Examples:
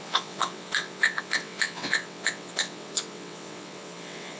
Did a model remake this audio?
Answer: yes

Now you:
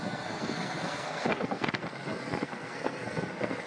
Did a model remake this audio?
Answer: yes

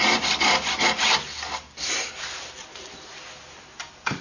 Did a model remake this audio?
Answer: no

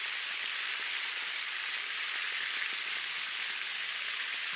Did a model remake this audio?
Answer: no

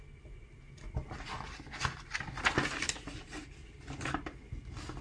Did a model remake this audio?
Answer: no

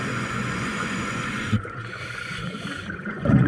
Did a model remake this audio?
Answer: yes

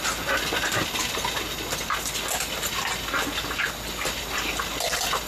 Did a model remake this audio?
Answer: no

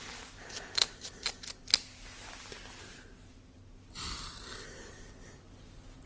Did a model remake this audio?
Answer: no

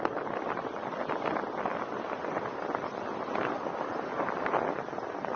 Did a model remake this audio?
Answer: no